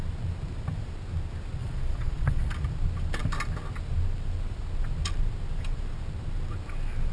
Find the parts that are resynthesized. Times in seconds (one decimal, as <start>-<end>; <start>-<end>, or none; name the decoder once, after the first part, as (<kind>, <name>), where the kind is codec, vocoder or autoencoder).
1.6-2.5 (vocoder, Vocos)